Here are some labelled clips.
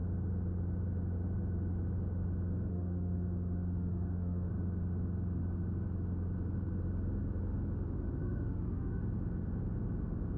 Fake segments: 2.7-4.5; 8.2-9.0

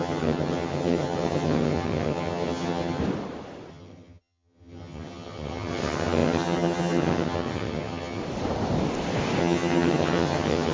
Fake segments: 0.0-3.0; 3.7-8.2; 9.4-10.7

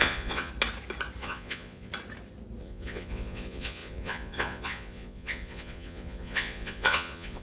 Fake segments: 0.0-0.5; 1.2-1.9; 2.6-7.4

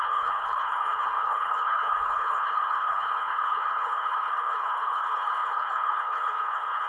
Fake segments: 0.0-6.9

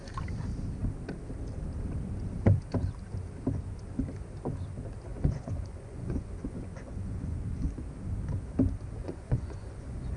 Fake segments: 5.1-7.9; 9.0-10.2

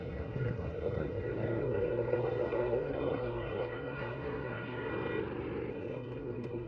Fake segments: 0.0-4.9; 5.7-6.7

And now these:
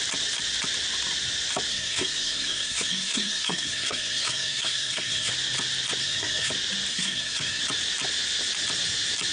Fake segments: 1.7-5.3; 6.0-6.5; 6.9-7.6